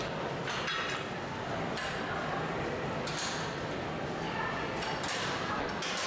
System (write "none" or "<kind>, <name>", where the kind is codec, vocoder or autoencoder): none